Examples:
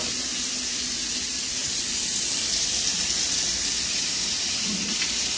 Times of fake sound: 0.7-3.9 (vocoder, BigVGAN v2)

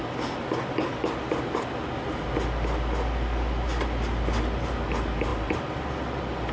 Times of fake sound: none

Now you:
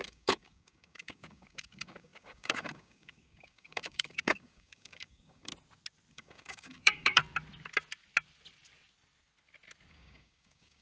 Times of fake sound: 0.0-5.5 (codec, DAC); 6.1-7.2; 9.9-10.8

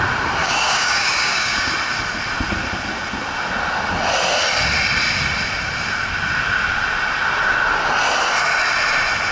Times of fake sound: 0.4-1.7 (codec, DAC)